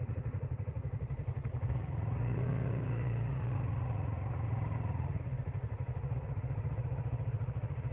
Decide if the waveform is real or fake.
fake